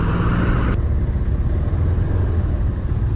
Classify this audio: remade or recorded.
recorded